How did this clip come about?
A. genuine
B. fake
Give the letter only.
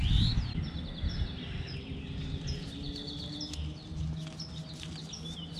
A